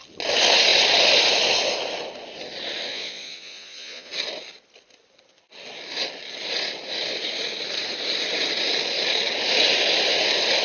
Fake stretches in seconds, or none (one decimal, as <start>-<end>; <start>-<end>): 2.9-4.1